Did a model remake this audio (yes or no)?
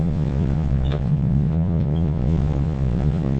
yes